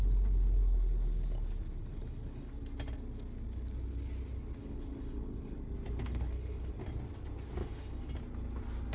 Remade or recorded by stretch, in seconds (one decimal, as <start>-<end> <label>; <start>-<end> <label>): 0.0-1.8 recorded; 1.8-2.5 remade; 2.5-4.6 recorded; 4.6-5.6 remade; 5.6-6.1 recorded; 6.1-6.7 remade; 6.7-7.6 recorded; 7.6-8.1 remade; 8.1-8.9 recorded